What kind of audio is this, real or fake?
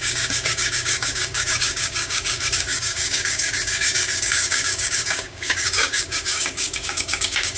fake